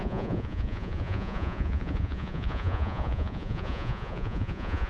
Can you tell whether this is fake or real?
fake